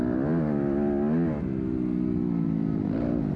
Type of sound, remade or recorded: recorded